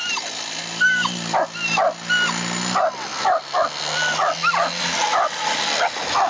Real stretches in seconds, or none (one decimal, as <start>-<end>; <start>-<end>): 0.0-6.3